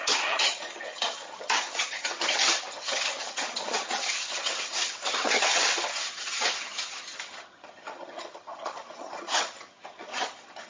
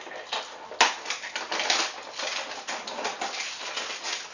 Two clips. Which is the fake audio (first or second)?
first